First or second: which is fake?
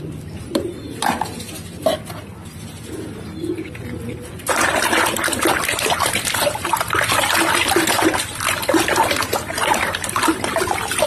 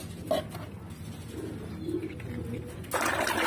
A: first